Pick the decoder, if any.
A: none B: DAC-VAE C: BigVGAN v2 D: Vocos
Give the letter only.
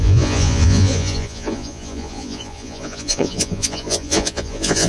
D